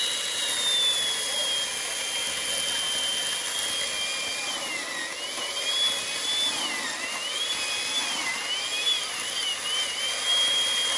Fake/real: real